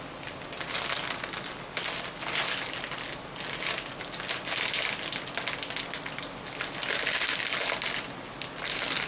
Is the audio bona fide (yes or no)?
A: yes